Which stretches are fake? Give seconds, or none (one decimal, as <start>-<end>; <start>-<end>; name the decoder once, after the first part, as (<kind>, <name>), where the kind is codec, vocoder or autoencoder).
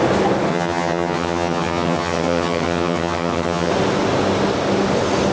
0.5-3.7 (vocoder, HiFi-GAN)